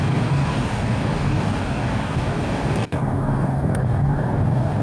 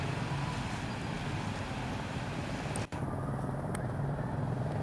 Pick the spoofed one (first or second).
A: first